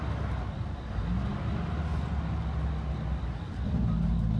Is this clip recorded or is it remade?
recorded